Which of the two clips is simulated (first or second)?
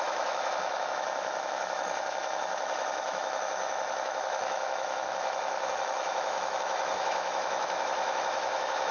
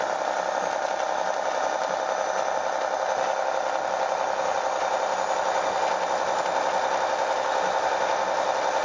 first